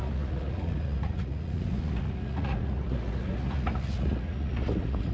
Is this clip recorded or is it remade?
remade